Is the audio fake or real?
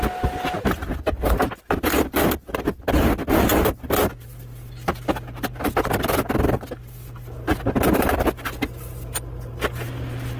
real